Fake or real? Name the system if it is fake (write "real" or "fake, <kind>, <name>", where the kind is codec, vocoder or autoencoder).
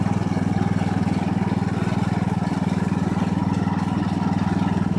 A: real